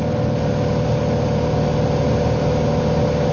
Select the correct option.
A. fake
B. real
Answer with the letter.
B